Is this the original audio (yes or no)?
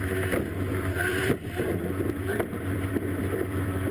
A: no